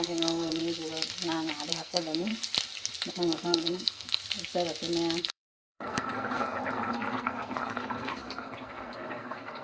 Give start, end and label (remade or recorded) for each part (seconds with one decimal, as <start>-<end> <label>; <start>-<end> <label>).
0.0-0.6 remade; 0.6-1.7 recorded; 1.7-2.3 remade; 2.3-3.1 recorded; 3.1-4.2 remade; 4.2-5.2 recorded; 5.2-9.6 remade